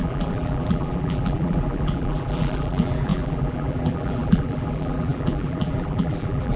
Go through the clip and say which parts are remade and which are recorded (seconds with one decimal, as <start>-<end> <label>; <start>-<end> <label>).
0.0-6.6 remade